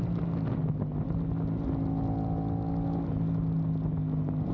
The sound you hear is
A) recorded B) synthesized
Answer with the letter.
A